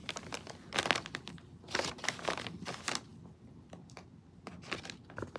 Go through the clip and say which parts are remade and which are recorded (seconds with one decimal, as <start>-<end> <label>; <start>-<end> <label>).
0.0-5.4 recorded